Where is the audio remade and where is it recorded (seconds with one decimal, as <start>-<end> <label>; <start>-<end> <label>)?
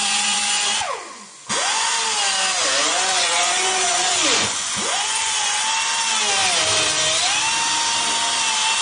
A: 0.0-1.9 remade; 1.9-2.9 recorded; 2.9-5.6 remade; 5.6-8.8 recorded